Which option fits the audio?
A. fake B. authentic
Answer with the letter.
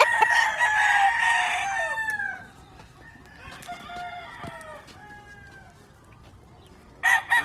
B